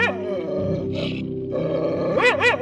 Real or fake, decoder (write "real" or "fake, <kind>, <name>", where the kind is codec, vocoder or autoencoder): real